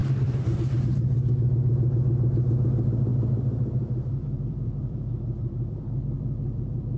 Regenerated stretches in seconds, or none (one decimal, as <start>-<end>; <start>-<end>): 0.0-0.6; 3.1-7.0

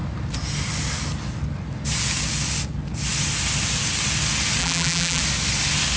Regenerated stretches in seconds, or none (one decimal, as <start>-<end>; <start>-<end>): 4.6-5.2

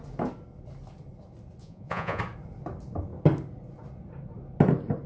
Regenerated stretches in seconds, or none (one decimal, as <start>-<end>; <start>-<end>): 1.6-2.2

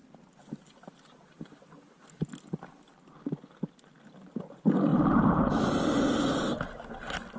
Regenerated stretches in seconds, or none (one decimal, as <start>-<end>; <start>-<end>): 4.9-5.5

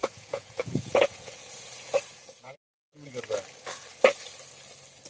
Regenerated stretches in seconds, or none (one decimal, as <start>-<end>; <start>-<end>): 0.0-3.1

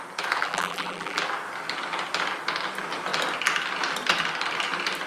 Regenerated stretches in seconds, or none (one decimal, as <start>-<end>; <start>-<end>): 0.4-1.2